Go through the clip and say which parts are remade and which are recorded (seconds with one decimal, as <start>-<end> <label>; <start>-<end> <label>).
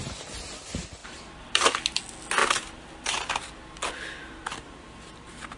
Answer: 0.0-1.0 recorded; 1.0-1.7 remade; 1.7-4.4 recorded; 4.4-5.1 remade; 5.1-5.6 recorded